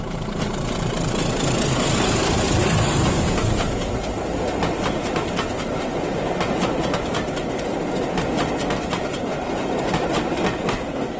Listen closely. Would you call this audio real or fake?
real